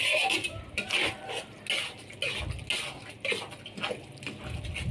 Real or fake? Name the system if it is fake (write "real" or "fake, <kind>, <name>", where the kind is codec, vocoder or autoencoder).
real